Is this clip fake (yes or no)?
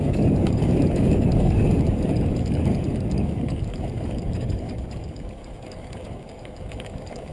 yes